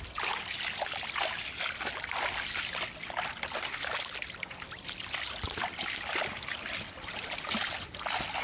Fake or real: real